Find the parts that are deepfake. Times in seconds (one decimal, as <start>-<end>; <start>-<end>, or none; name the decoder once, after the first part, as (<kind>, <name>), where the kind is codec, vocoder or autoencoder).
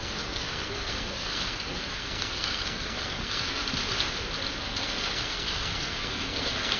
0.0-3.6 (codec, SNAC); 4.6-6.8